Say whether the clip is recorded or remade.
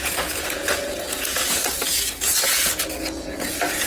remade